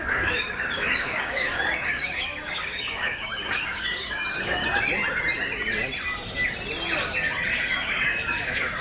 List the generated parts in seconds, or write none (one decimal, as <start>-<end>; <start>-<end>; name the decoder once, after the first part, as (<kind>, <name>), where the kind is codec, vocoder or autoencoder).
0.0-4.6 (codec, DAC); 7.6-8.8